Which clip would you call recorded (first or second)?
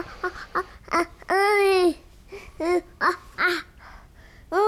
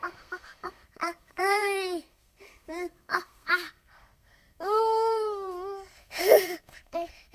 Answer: first